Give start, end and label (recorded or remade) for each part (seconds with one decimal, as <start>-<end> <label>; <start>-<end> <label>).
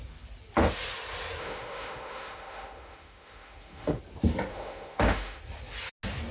0.0-1.4 recorded; 1.4-4.0 remade; 4.0-4.5 recorded; 4.5-5.4 remade; 5.4-6.3 recorded